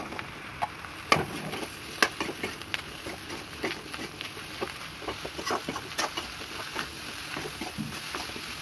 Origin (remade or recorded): recorded